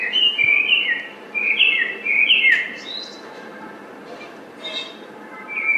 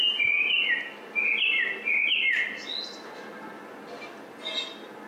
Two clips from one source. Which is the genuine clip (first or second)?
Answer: second